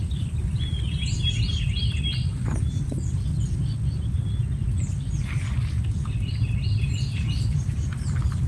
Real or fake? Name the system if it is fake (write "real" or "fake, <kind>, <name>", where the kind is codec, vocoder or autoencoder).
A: real